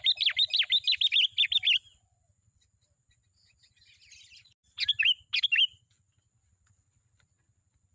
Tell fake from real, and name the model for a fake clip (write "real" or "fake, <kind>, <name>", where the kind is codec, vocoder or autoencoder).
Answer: real